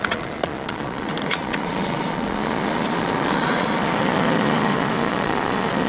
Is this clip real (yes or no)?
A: no